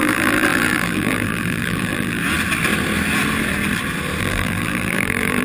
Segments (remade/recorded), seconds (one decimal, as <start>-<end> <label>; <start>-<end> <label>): 0.0-2.2 remade; 2.2-4.2 recorded; 4.2-5.4 remade